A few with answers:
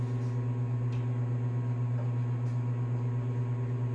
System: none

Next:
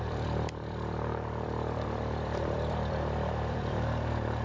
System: vocoder, BigVGAN v2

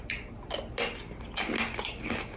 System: none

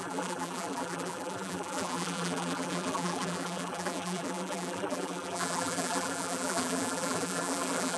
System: vocoder, BigVGAN v2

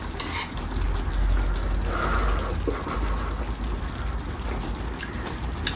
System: none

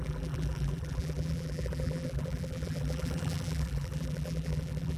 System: vocoder, BigVGAN v2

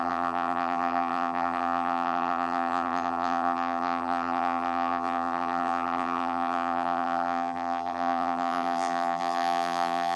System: vocoder, BigVGAN v2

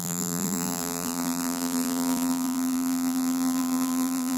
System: vocoder, BigVGAN v2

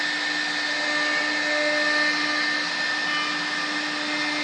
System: none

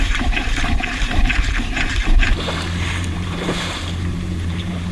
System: vocoder, BigVGAN v2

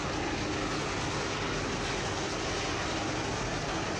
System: none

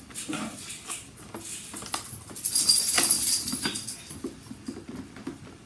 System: none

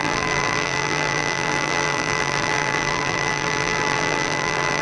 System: vocoder, BigVGAN v2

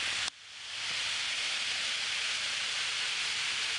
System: none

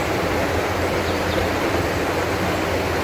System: none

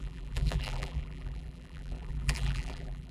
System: vocoder, BigVGAN v2